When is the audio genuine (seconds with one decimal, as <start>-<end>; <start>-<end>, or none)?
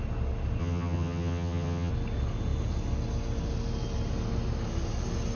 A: 0.0-0.6; 1.9-5.4